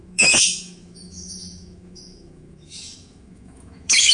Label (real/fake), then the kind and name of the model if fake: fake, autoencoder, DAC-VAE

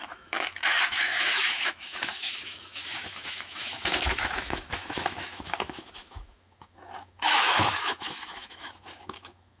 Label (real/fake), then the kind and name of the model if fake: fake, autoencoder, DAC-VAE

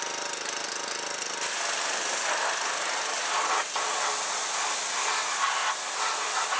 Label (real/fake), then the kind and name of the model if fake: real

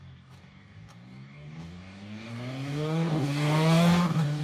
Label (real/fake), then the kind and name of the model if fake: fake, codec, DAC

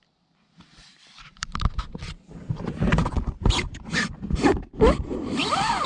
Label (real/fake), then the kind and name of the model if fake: fake, vocoder, BigVGAN v2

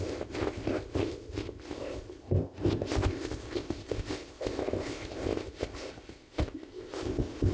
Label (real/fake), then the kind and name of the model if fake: fake, codec, ZipCodec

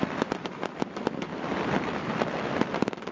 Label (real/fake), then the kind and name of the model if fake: fake, vocoder, BigVGAN v2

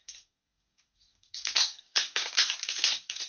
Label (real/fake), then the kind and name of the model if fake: fake, codec, SNAC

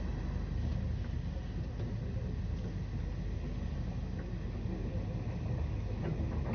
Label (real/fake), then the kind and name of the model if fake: real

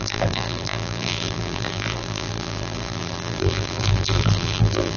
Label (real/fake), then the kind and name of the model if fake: fake, vocoder, BigVGAN v2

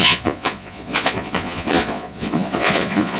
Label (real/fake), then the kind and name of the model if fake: fake, vocoder, Vocos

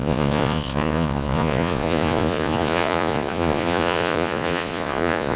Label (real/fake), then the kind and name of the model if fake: fake, vocoder, Vocos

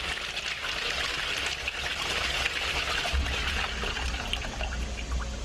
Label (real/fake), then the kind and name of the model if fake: real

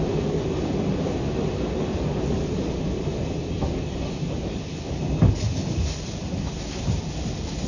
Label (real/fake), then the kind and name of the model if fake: real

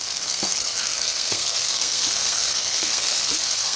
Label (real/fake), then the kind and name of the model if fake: fake, codec, SNAC